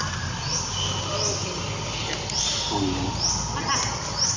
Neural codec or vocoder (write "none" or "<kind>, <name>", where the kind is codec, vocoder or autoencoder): none